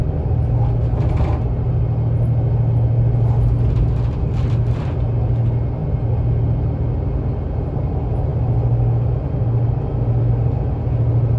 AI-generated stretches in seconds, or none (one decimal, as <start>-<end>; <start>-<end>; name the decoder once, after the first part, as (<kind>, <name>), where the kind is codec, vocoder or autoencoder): none